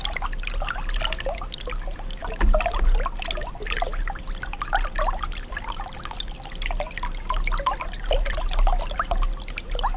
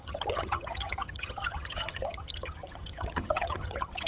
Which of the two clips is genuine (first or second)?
first